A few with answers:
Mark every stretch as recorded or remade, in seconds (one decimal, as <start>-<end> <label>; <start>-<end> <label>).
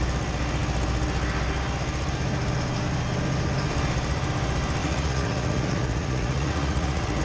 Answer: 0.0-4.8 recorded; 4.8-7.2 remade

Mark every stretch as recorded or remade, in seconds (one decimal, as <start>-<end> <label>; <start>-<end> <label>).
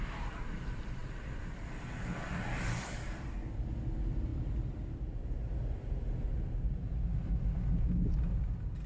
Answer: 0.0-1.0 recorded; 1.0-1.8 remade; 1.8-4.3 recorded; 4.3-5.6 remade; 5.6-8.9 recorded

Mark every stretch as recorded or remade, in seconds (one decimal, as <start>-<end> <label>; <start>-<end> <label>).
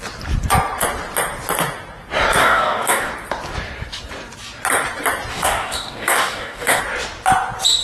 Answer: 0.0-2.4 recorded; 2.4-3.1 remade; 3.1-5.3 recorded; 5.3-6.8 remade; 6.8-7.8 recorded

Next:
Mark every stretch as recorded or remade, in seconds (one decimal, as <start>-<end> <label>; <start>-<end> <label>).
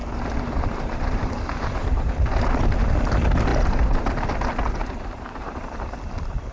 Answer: 0.0-1.4 remade; 1.4-4.8 recorded; 4.8-6.0 remade; 6.0-6.5 recorded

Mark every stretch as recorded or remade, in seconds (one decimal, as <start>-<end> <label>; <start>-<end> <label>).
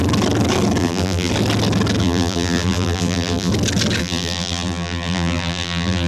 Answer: 0.0-0.8 recorded; 0.8-1.3 remade; 1.3-2.0 recorded; 2.0-3.5 remade; 3.5-4.0 recorded; 4.0-6.1 remade